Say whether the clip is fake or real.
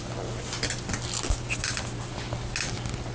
real